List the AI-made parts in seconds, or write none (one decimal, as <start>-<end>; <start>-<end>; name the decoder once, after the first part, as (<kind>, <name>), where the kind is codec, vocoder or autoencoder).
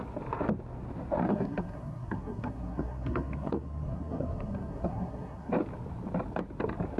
1.3-5.5 (codec, SNAC)